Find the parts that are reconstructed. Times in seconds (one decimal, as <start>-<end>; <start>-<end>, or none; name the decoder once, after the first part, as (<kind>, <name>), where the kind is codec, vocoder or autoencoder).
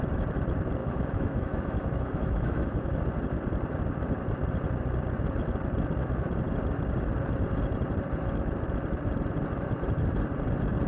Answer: 0.8-3.0 (autoencoder, DAC-VAE)